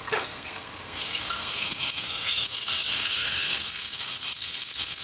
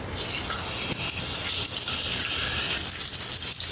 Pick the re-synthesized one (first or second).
first